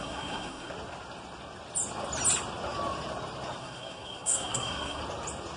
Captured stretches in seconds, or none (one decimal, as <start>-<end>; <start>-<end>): 0.7-3.6; 5.0-5.6